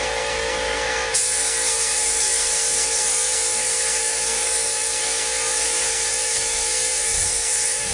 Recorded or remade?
remade